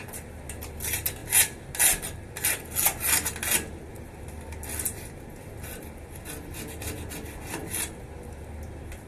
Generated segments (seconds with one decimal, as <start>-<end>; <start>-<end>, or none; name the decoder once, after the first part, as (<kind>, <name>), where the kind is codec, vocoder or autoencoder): none